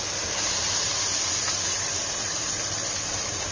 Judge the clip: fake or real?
real